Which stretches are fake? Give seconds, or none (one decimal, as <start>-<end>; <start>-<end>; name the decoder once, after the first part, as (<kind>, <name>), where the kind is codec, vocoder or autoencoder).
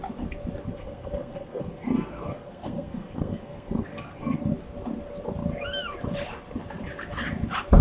0.7-4.5 (codec, SNAC)